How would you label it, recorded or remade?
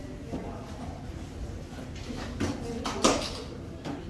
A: recorded